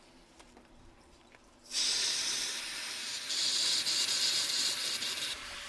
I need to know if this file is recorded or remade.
remade